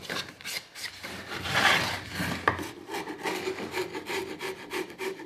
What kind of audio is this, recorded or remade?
recorded